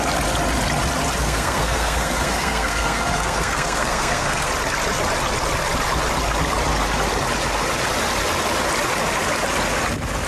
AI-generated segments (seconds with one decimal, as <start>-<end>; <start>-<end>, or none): 1.2-4.5

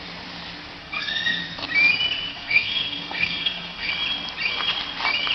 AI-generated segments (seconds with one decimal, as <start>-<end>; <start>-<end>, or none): 0.8-1.4; 2.3-3.9

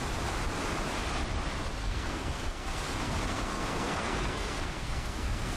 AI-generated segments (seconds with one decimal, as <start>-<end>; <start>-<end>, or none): 1.8-5.6

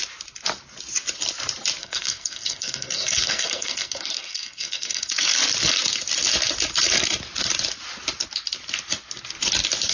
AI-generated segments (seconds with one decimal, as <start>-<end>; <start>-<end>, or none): 1.8-5.3

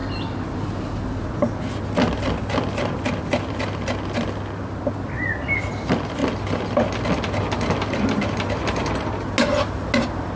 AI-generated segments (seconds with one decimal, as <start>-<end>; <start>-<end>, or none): none